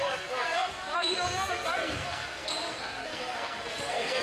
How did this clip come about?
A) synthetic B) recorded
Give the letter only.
A